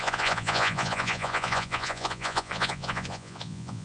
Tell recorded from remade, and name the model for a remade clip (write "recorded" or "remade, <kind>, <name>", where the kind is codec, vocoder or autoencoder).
remade, vocoder, Vocos